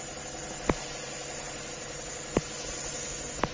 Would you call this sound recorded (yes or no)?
yes